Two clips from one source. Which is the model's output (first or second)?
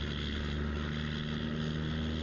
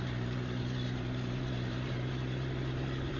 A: second